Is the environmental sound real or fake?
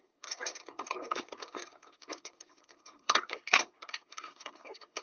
fake